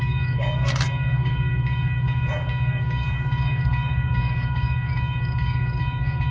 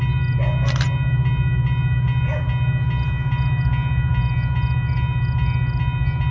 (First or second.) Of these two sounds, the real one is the second